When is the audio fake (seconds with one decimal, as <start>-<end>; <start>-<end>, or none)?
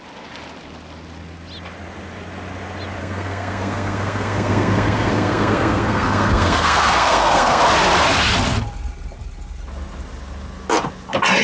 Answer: 3.0-7.6